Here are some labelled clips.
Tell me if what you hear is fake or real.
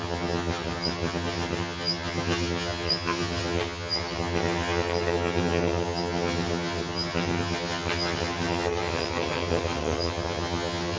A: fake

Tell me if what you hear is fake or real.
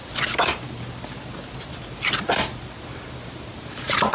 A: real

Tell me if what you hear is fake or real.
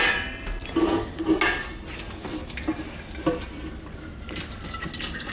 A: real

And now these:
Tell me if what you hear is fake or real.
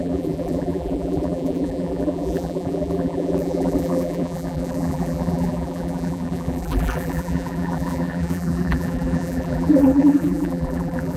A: fake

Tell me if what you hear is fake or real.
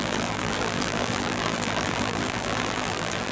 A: fake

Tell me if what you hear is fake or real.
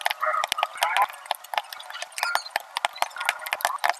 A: real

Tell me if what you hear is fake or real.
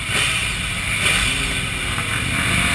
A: real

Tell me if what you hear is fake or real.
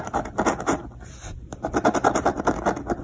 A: fake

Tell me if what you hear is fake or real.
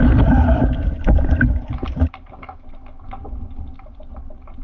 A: real